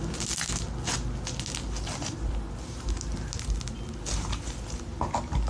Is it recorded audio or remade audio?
recorded